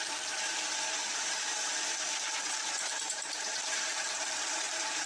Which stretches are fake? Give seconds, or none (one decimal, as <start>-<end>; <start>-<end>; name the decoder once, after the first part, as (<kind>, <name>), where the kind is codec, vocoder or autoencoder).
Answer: 2.5-5.1 (vocoder, BigVGAN v2)